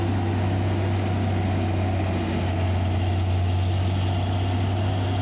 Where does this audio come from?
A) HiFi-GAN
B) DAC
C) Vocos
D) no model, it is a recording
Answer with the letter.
D